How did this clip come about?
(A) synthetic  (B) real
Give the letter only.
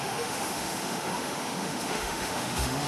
A